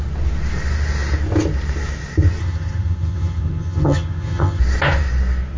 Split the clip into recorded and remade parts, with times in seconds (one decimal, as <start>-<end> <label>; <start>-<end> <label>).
0.0-2.4 recorded; 2.4-4.6 remade; 4.6-5.6 recorded